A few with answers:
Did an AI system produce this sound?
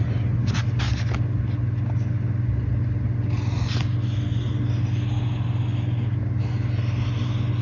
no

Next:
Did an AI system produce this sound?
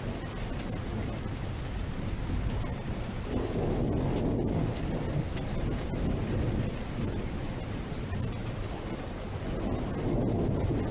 no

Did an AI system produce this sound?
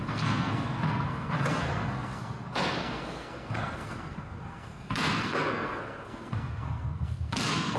yes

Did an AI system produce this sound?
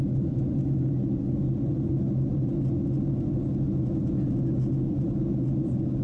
no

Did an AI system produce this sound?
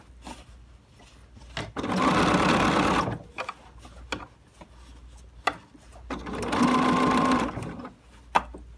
no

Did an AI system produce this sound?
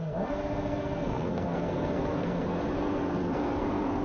yes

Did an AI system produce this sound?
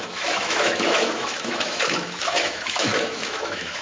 yes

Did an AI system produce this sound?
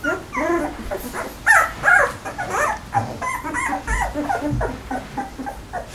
no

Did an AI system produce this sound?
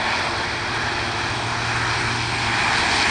no